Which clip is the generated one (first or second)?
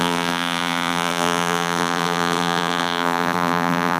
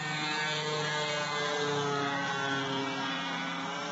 first